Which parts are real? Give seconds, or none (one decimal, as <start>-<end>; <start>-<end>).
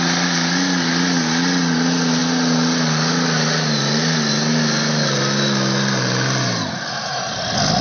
0.0-7.8